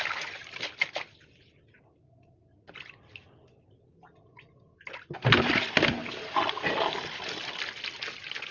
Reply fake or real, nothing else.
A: real